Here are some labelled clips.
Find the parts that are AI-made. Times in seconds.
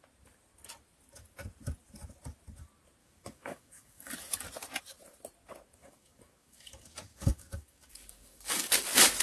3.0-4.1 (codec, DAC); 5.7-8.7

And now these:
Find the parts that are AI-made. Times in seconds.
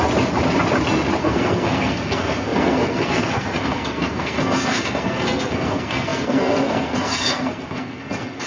1.2-8.5 (codec, SNAC)